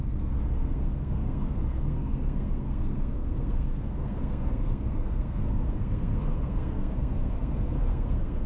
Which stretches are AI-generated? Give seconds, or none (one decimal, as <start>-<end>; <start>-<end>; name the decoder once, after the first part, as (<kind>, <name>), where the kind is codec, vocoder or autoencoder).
0.0-8.5 (codec, SNAC)